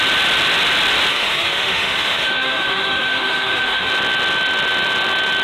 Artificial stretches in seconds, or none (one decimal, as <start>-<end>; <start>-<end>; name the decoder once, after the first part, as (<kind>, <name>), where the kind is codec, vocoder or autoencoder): 1.1-3.9 (autoencoder, DAC-VAE)

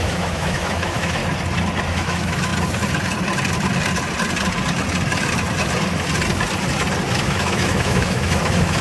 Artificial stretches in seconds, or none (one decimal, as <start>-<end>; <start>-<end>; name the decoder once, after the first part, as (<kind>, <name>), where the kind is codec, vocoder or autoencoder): 0.0-1.2 (autoencoder, DAC-VAE); 1.9-2.5; 7.1-8.8

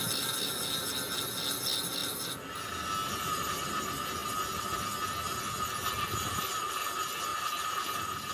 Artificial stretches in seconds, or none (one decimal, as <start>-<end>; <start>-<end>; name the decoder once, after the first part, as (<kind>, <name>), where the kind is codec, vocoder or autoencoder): none